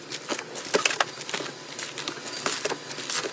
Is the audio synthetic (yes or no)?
no